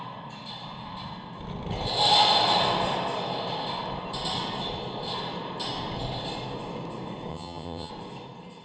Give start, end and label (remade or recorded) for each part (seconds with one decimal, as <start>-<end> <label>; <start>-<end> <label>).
0.0-7.3 recorded; 7.3-7.9 remade; 7.9-8.6 recorded

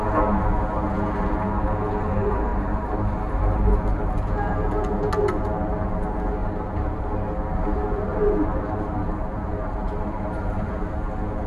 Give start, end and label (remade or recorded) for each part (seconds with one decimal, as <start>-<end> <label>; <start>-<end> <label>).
0.0-2.5 recorded; 2.5-4.3 remade; 4.3-6.4 recorded; 6.4-7.1 remade; 7.1-8.1 recorded; 8.1-10.7 remade; 10.7-11.5 recorded

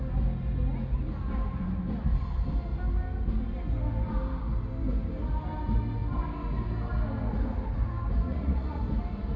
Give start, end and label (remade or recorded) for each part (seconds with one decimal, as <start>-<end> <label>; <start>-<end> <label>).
0.0-8.3 recorded; 8.3-8.8 remade; 8.8-9.4 recorded

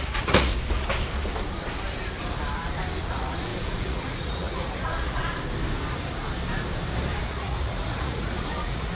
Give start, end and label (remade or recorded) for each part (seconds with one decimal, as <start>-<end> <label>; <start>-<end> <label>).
0.0-0.5 remade; 0.5-3.1 recorded; 3.1-5.2 remade; 5.2-7.2 recorded; 7.2-8.9 remade